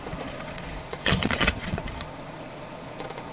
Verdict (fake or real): fake